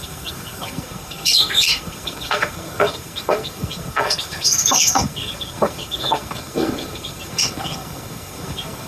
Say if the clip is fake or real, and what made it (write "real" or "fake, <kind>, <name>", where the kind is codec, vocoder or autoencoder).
fake, codec, SNAC